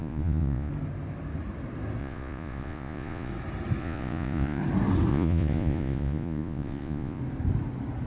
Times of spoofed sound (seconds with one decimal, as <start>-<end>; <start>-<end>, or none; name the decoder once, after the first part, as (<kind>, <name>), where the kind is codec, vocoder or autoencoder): 0.0-0.7 (vocoder, Vocos); 2.0-3.3; 3.8-4.6; 5.1-7.2